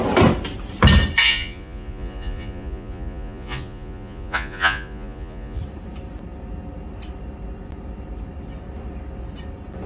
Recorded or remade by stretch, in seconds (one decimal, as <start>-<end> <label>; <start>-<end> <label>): 0.0-1.2 recorded; 1.2-5.6 remade; 5.6-9.9 recorded